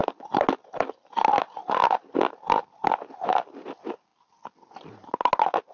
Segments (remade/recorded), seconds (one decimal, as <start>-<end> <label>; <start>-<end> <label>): 0.0-5.7 recorded